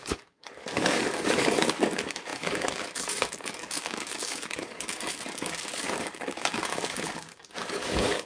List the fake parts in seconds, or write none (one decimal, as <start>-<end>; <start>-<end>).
0.0-8.3